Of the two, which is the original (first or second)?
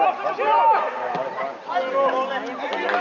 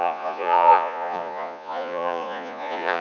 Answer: first